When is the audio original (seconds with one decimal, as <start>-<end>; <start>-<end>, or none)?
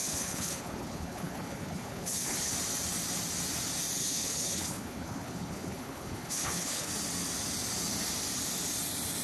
2.5-4.0; 6.9-9.2